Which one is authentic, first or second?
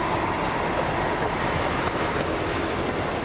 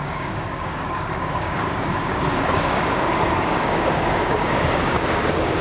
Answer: first